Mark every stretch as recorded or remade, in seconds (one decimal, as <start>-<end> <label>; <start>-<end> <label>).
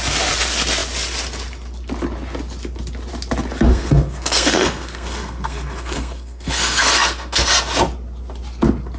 0.0-3.7 recorded; 3.7-7.5 remade; 7.5-9.0 recorded